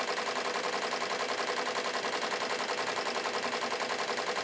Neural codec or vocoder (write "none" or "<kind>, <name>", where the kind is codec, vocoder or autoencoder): none